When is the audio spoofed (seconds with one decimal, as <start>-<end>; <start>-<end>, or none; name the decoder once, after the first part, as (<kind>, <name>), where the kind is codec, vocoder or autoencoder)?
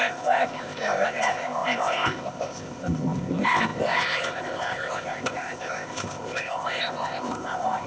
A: 0.0-7.9 (codec, ZipCodec)